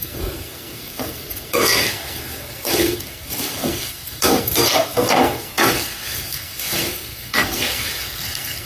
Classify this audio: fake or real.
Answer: fake